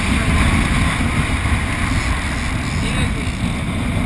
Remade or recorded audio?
recorded